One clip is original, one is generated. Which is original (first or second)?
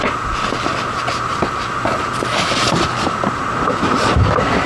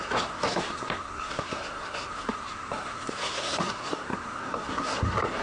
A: first